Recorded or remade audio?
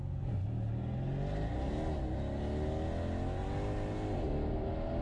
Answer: recorded